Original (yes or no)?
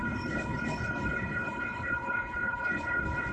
no